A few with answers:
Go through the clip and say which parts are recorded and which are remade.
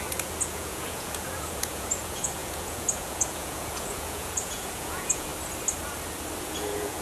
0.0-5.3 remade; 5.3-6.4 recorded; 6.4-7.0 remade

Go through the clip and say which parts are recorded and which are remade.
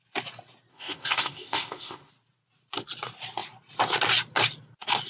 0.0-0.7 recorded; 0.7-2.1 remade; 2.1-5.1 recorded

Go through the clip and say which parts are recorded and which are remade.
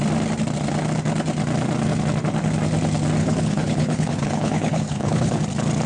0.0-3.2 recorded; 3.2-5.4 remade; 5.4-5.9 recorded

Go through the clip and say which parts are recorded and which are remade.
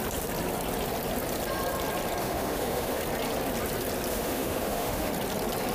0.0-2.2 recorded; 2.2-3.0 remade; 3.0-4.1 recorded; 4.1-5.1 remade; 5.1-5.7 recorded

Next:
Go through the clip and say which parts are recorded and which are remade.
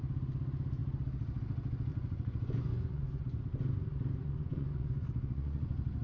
0.0-1.9 recorded; 1.9-3.4 remade; 3.4-4.2 recorded; 4.2-6.0 remade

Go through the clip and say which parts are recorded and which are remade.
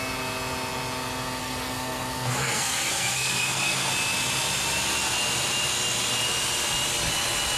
0.0-1.4 recorded; 1.4-3.9 remade; 3.9-7.6 recorded